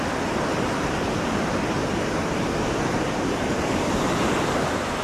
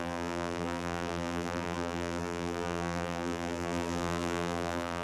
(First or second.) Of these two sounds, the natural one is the first